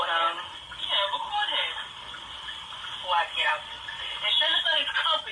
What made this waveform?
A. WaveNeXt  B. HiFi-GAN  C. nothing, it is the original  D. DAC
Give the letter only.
C